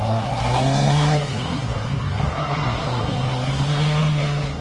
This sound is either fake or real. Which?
fake